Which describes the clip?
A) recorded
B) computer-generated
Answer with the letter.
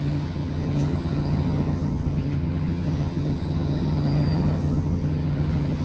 B